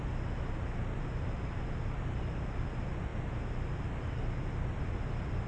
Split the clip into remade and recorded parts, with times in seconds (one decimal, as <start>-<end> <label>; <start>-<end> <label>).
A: 0.0-5.5 recorded

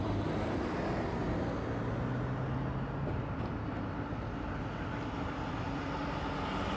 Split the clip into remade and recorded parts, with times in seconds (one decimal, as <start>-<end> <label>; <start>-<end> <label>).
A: 0.0-6.8 recorded

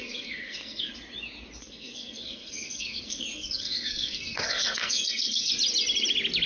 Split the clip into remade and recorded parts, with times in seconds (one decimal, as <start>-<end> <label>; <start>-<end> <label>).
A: 0.0-0.9 remade; 0.9-1.6 recorded; 1.6-5.5 remade; 5.5-6.5 recorded

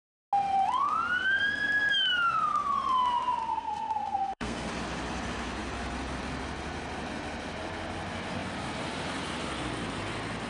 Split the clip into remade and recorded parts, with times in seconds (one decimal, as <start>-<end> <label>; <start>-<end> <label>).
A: 0.0-3.5 recorded; 3.5-4.7 remade; 4.7-10.5 recorded

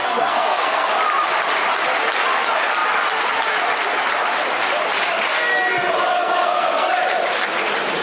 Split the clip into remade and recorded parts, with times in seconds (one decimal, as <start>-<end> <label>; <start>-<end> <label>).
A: 0.0-0.9 remade; 0.9-6.1 recorded; 6.1-6.9 remade; 6.9-8.0 recorded

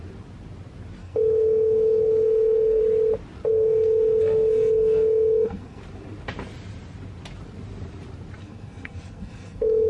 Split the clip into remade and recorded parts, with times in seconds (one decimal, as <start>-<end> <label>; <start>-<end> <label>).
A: 0.0-1.0 recorded; 1.0-2.8 remade; 2.8-3.5 recorded; 3.5-5.8 remade; 5.8-8.4 recorded; 8.4-9.9 remade

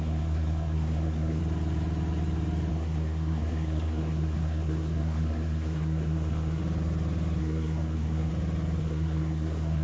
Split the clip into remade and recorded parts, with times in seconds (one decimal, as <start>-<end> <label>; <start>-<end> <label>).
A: 0.0-1.4 remade; 1.4-2.7 recorded; 2.7-6.6 remade; 6.6-7.4 recorded; 7.4-8.3 remade; 8.3-8.8 recorded; 8.8-9.8 remade